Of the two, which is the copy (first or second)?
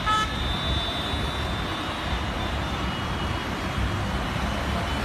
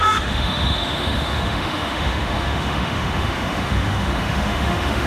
second